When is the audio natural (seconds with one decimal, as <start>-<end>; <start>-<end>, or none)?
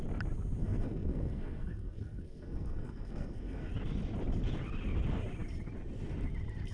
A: 0.0-0.6; 3.7-6.7